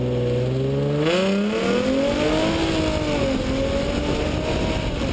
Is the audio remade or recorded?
recorded